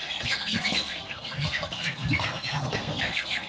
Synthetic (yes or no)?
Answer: yes